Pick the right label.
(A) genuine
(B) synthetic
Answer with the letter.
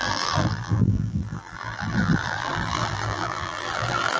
B